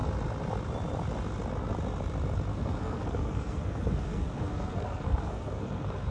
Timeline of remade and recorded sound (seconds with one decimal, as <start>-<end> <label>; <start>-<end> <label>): 0.0-2.5 recorded; 2.5-6.1 remade